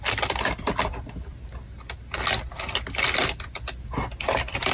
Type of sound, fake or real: real